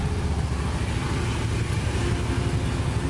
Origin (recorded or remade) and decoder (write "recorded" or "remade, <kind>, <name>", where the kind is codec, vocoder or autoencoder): recorded